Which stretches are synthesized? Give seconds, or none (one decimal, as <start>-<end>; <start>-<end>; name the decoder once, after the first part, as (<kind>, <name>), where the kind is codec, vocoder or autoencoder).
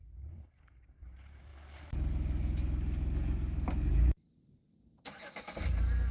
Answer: 0.0-1.5 (vocoder, BigVGAN v2); 5.2-6.1